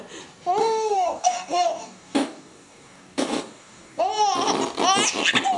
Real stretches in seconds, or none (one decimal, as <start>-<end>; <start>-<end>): 0.0-0.6; 4.0-5.6